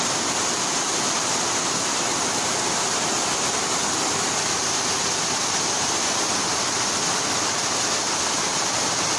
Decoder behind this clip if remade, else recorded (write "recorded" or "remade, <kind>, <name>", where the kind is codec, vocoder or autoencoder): recorded